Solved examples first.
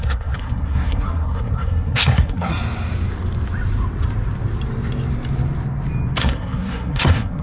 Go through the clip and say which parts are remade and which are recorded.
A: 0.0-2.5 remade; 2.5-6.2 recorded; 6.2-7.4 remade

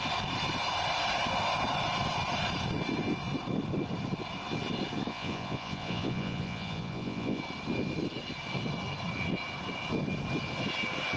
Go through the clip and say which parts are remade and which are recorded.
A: 0.0-5.1 recorded; 5.1-7.4 remade; 7.4-11.2 recorded

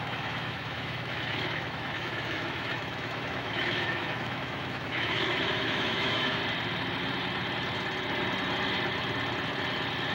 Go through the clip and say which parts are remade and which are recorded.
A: 0.0-6.4 remade; 6.4-10.1 recorded

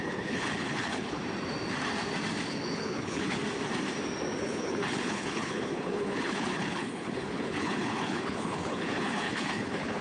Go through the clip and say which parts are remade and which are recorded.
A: 0.0-1.2 remade; 1.2-2.5 recorded; 2.5-3.4 remade; 3.4-4.4 recorded; 4.4-10.0 remade

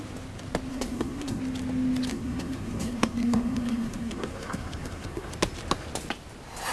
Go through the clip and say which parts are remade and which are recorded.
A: 0.0-0.7 recorded; 0.7-1.4 remade; 1.4-2.1 recorded; 2.1-5.3 remade; 5.3-6.7 recorded

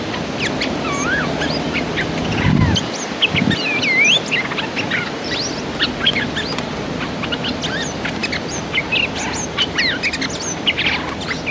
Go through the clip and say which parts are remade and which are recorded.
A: 0.0-11.5 recorded